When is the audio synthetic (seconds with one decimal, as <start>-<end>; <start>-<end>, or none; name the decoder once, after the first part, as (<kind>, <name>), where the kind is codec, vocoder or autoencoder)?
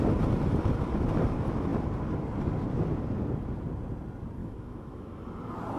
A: 4.4-5.2 (autoencoder, DAC-VAE)